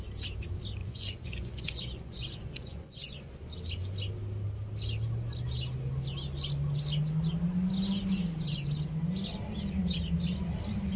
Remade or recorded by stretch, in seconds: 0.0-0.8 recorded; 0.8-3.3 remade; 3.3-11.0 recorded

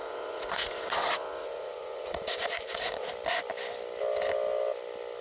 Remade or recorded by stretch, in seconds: 0.0-3.1 remade; 3.1-5.2 recorded

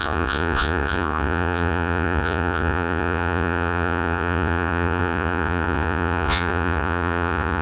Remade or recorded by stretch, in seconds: 0.0-7.6 remade

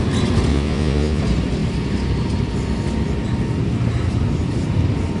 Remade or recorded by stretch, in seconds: 0.0-0.5 recorded; 0.5-1.2 remade; 1.2-5.2 recorded

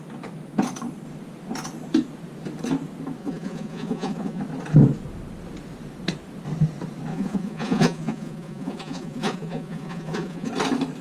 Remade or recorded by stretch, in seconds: 0.0-3.2 recorded; 3.2-4.4 remade; 4.4-7.1 recorded; 7.1-10.5 remade; 10.5-11.0 recorded